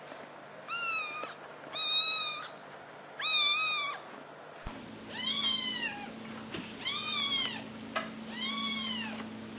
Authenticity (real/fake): real